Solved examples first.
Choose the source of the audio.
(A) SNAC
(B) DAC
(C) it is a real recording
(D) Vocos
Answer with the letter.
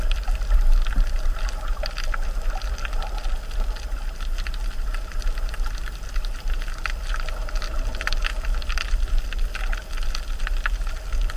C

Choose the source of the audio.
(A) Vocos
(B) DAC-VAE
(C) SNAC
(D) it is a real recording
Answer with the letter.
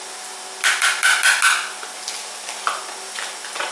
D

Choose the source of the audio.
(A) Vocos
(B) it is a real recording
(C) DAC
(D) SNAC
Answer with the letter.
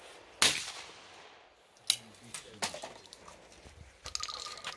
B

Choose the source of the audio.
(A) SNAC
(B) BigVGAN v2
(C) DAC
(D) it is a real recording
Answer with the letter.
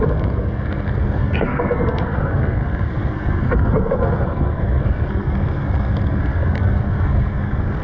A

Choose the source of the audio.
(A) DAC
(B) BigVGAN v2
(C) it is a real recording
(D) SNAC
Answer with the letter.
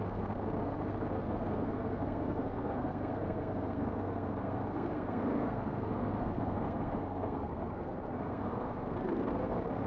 D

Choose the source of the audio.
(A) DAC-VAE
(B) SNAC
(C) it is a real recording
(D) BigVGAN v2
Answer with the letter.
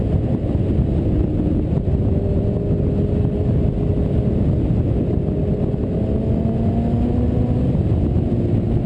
C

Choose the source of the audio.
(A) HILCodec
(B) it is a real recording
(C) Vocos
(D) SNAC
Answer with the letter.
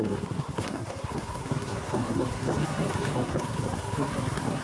D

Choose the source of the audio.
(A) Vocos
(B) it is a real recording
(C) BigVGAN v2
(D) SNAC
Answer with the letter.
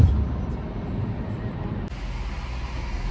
B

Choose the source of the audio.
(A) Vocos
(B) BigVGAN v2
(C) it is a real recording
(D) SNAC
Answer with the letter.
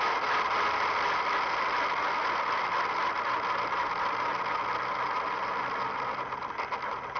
C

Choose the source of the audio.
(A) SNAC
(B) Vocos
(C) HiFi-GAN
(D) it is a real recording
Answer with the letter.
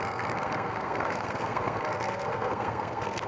A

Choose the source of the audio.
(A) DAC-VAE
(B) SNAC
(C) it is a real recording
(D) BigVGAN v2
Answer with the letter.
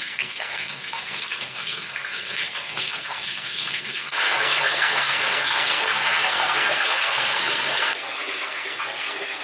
B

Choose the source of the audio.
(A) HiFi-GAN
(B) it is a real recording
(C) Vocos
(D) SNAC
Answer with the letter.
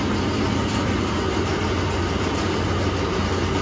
B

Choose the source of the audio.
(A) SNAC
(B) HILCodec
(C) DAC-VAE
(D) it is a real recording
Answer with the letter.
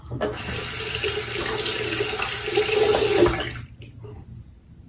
D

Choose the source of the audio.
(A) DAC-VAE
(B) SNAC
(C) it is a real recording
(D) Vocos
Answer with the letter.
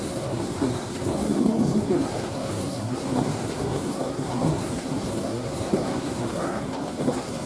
B